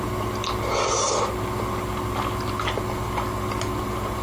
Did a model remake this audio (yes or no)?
no